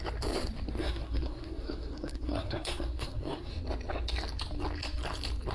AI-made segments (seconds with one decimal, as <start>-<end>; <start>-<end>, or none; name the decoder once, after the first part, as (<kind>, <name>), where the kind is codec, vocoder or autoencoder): 0.8-3.5 (codec, SNAC)